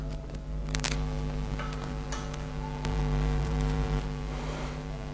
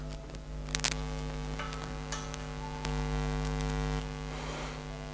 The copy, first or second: first